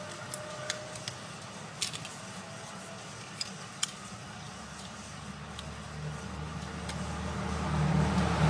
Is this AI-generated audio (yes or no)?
no